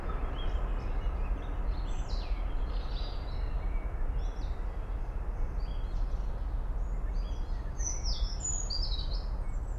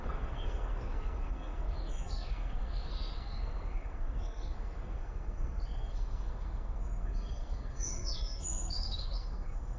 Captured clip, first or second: first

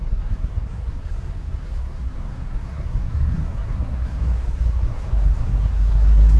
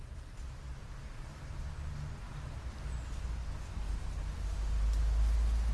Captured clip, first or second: second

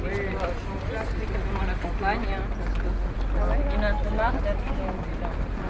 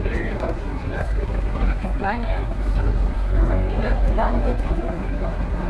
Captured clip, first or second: first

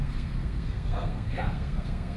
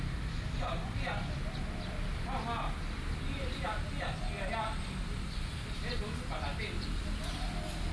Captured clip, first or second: second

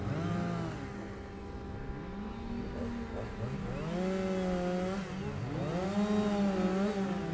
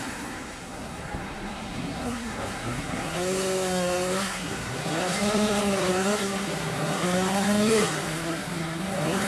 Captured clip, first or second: first